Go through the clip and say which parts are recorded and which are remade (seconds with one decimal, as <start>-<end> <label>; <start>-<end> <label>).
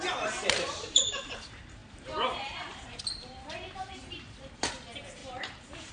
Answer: 0.0-5.9 remade